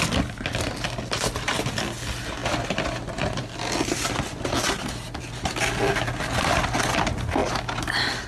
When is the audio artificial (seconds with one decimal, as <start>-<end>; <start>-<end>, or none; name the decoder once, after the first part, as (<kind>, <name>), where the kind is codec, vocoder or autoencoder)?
none